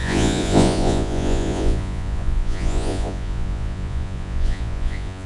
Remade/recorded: remade